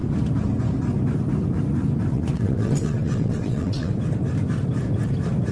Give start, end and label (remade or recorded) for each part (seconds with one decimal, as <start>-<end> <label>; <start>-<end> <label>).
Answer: 0.0-2.1 recorded; 2.1-3.9 remade; 3.9-5.5 recorded